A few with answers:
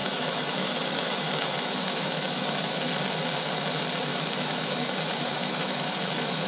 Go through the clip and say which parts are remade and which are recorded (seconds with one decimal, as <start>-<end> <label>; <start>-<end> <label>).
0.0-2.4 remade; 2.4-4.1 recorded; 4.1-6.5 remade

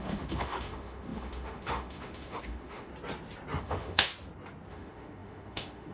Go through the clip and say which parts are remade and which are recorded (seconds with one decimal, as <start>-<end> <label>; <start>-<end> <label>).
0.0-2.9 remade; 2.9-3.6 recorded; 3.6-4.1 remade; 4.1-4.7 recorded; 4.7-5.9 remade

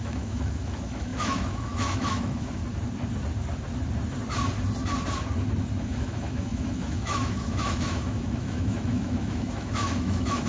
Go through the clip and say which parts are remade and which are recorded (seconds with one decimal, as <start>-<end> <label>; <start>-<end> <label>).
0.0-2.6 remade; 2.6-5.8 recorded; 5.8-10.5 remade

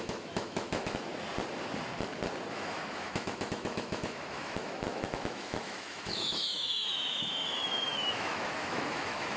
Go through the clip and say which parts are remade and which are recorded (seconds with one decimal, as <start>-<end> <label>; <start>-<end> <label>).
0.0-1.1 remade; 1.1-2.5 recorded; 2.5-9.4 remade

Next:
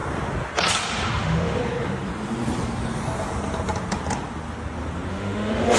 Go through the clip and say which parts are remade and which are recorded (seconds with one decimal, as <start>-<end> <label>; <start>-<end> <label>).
0.0-1.2 recorded; 1.2-1.6 remade; 1.6-5.1 recorded; 5.1-5.8 remade

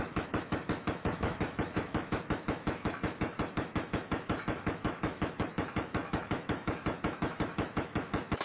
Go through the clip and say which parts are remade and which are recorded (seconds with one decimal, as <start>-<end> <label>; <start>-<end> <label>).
0.0-8.4 remade